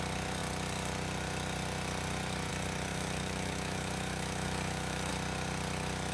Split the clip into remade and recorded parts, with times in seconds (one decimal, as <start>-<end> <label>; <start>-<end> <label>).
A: 0.0-2.9 recorded; 2.9-5.1 remade; 5.1-6.1 recorded